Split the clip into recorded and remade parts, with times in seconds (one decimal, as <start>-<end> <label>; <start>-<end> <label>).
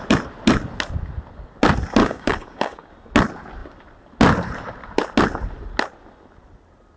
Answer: 0.0-2.0 recorded; 2.0-2.9 remade; 2.9-7.0 recorded